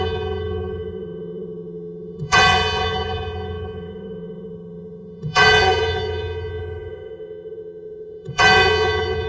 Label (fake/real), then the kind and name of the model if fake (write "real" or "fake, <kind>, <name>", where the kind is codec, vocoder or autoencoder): fake, vocoder, HiFi-GAN